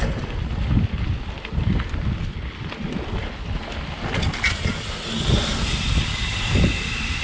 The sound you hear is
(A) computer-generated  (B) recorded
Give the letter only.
B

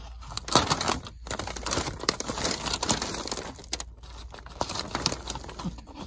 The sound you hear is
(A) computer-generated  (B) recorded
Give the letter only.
B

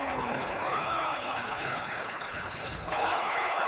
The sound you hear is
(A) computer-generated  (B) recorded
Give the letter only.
A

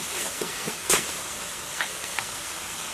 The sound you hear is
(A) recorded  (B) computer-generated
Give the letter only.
B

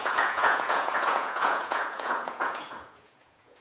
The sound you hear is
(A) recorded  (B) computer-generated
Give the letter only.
B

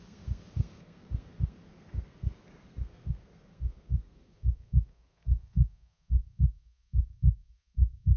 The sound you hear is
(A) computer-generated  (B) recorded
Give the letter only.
A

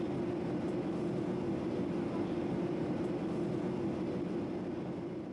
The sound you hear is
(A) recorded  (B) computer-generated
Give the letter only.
A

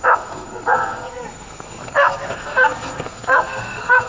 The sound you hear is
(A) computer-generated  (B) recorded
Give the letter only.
A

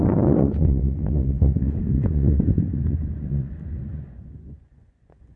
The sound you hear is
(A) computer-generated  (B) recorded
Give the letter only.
A